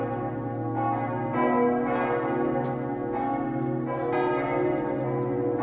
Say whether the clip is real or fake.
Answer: real